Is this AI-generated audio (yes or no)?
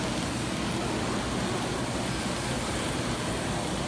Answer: no